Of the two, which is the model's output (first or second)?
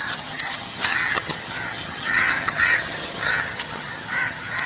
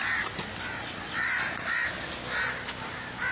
first